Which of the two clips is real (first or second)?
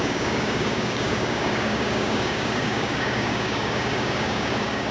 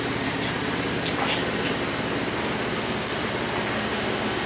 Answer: second